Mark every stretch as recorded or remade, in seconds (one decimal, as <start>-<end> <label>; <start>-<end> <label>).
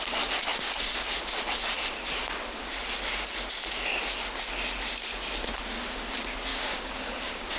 0.0-6.5 recorded; 6.5-7.6 remade